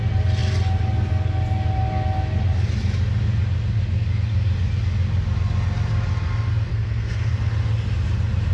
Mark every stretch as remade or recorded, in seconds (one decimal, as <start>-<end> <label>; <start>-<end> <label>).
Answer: 0.0-6.7 recorded; 6.7-7.3 remade; 7.3-8.5 recorded